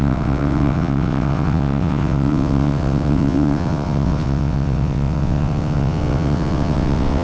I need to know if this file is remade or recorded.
remade